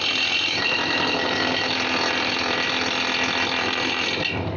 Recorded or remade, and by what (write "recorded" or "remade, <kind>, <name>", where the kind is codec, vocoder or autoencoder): recorded